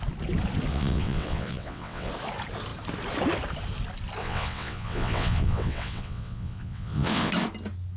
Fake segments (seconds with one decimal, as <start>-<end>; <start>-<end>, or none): 0.7-2.1; 4.2-7.3